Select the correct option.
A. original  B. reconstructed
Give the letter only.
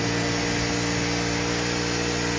A